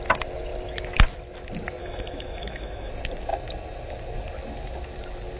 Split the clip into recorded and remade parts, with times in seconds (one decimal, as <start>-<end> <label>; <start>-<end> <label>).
0.0-1.8 recorded; 1.8-2.9 remade; 2.9-5.4 recorded